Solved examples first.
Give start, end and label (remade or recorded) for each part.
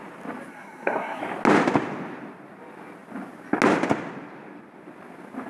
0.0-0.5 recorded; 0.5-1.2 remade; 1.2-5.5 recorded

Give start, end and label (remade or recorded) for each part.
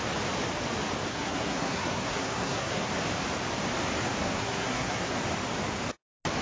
0.0-1.1 recorded; 1.1-2.9 remade; 2.9-4.2 recorded; 4.2-5.1 remade; 5.1-6.4 recorded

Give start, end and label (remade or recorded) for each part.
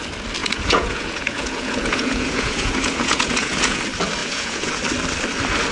0.0-0.4 recorded; 0.4-3.8 remade; 3.8-4.2 recorded; 4.2-4.8 remade; 4.8-5.7 recorded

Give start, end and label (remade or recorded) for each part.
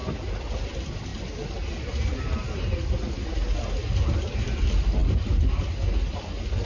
0.0-6.7 recorded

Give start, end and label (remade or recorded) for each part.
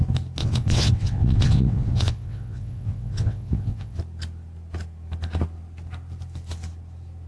0.0-0.4 recorded; 0.4-4.0 remade; 4.0-7.3 recorded